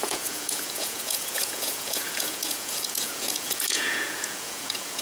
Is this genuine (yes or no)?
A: no